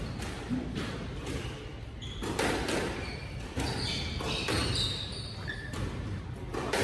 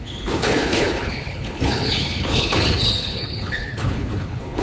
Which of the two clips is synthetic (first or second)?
second